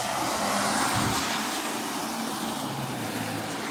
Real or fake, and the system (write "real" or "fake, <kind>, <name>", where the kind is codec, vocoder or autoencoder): real